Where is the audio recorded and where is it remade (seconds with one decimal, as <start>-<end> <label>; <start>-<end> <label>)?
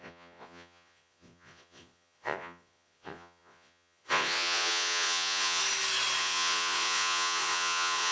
0.0-5.6 remade; 5.6-6.2 recorded; 6.2-8.1 remade